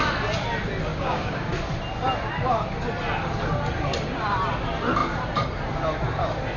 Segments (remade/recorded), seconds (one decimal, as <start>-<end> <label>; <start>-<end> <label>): 0.0-0.9 recorded; 0.9-1.5 remade; 1.5-6.6 recorded